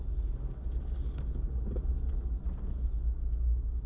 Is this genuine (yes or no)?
yes